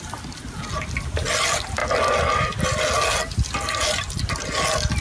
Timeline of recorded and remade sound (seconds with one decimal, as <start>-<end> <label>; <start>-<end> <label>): 0.0-5.0 recorded

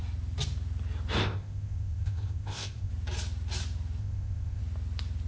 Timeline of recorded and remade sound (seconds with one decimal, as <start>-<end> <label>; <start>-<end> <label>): 0.0-1.2 recorded; 1.2-2.9 remade; 2.9-4.0 recorded; 4.0-4.6 remade; 4.6-5.3 recorded

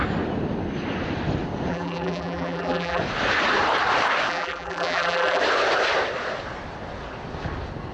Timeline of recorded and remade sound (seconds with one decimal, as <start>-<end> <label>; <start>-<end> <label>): 0.0-1.7 recorded; 1.7-3.0 remade; 3.0-4.3 recorded; 4.3-5.4 remade; 5.4-7.9 recorded